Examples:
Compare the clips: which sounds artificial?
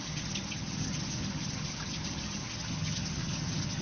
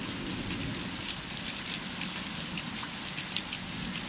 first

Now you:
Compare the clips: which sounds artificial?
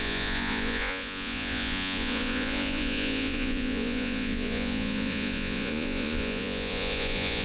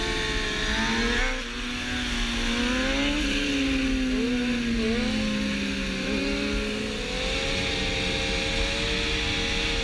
first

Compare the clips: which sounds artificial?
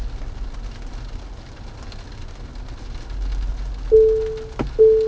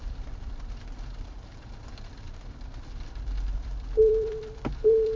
second